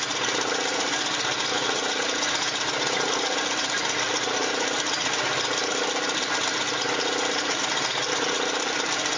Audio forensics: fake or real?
real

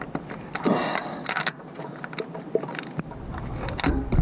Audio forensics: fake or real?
real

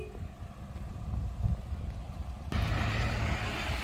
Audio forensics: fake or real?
real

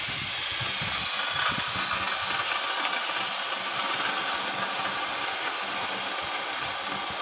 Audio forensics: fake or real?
real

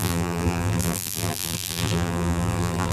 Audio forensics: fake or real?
fake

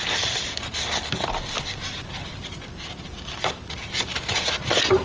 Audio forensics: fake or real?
fake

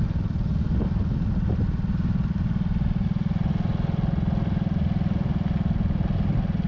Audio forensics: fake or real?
real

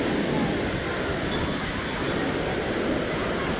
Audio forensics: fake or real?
fake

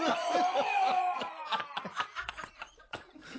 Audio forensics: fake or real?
fake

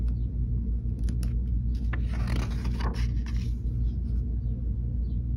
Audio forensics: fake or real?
real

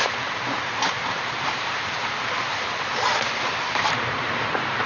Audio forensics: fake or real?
fake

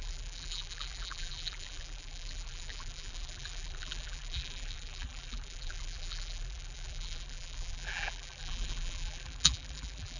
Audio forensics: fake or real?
fake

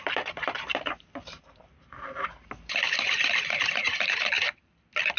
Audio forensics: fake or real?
fake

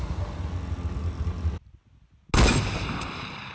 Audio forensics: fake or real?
real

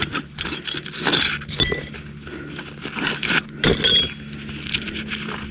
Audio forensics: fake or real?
real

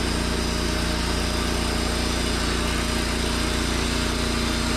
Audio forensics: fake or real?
real